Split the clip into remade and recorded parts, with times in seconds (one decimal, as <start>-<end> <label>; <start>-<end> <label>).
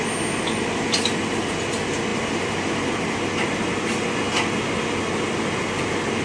0.0-6.2 recorded